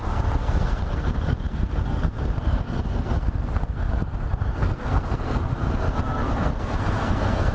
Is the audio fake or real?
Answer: fake